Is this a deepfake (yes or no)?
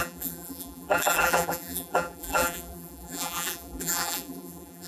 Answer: yes